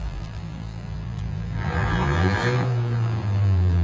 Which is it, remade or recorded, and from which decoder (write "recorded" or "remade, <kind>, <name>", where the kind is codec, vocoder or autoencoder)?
remade, vocoder, BigVGAN v2